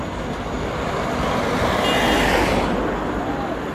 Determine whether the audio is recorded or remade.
recorded